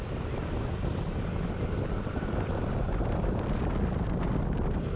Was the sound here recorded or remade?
remade